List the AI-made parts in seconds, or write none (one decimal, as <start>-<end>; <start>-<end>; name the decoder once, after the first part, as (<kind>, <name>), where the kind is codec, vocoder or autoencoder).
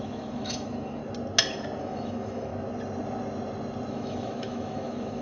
0.0-1.0 (autoencoder, DAC-VAE); 1.8-2.5; 3.9-5.2